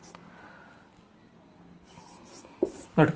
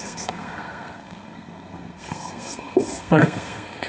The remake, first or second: second